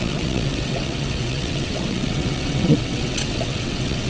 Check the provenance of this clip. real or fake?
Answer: fake